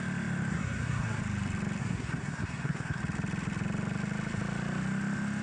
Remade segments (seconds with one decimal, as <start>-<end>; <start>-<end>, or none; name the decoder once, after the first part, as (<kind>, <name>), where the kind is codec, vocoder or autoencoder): 0.5-1.2 (codec, SNAC); 1.8-3.0